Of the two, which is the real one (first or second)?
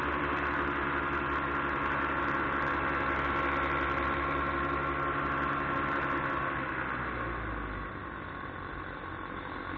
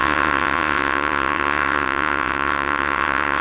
first